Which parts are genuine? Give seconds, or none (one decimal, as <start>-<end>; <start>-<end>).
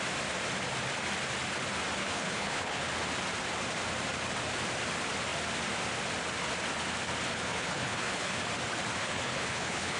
0.0-2.0; 2.9-7.3; 8.4-9.0